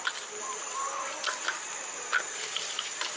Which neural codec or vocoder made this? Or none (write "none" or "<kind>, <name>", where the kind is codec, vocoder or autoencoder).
none